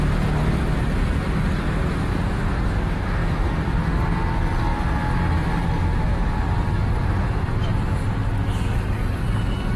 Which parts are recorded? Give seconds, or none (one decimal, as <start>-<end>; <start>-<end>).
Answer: 0.0-9.8